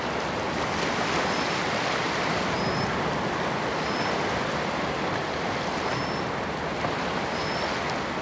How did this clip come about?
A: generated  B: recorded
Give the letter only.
B